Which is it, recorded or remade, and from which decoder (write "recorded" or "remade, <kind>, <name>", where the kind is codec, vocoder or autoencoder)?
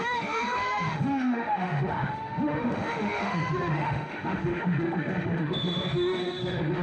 remade, autoencoder, DAC-VAE